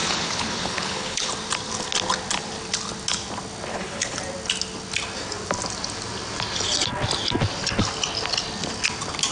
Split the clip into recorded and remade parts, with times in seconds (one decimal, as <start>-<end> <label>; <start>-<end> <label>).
0.0-1.3 remade; 1.3-3.7 recorded; 3.7-4.2 remade; 4.2-9.3 recorded